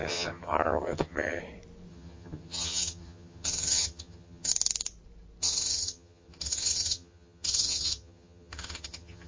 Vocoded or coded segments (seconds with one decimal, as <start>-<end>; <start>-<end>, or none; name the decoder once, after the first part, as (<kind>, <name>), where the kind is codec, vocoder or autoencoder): 0.0-1.4 (vocoder, HiFi-GAN); 1.9-4.5; 5.4-9.3